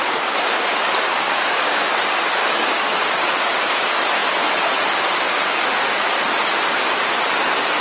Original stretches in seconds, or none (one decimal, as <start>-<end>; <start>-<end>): 0.0-1.1; 1.8-2.4; 3.0-7.8